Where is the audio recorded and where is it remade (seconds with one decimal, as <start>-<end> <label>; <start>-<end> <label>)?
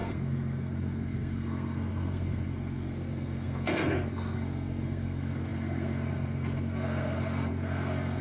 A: 0.0-8.2 remade